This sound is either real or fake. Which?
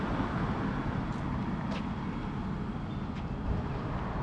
real